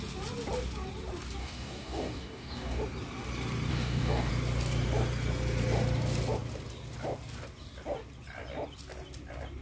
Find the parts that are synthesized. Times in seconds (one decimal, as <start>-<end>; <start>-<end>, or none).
1.4-2.8; 3.7-4.3